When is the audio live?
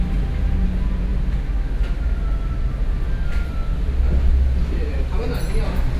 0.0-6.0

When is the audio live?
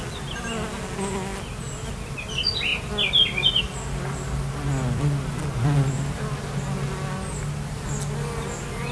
0.0-8.9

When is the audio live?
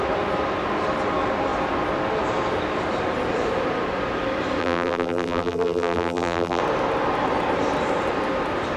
0.0-4.6; 6.6-8.8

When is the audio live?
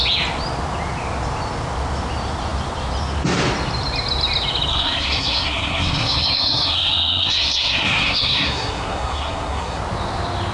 0.0-4.7; 9.8-10.5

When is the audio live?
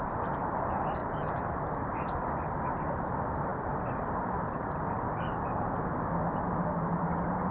0.0-1.0; 1.6-7.5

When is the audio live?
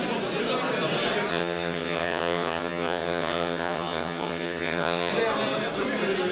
0.0-1.3; 5.1-6.3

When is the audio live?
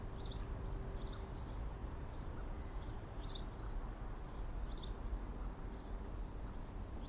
0.0-1.8; 3.4-7.1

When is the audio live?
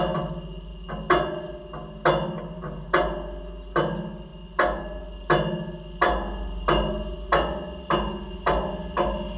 0.0-9.4